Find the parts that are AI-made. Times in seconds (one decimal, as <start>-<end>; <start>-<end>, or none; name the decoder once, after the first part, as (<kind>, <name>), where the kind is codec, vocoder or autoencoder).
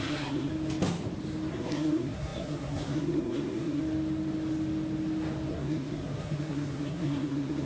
0.0-0.5 (codec, SNAC); 1.5-3.8; 5.5-7.7